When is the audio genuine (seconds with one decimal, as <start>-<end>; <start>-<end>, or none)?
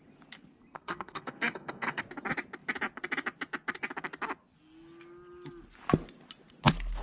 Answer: 0.0-0.7; 2.0-7.0